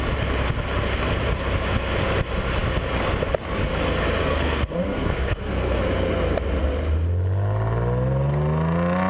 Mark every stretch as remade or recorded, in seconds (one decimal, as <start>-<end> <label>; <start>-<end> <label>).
0.0-4.2 recorded; 4.2-5.8 remade; 5.8-9.1 recorded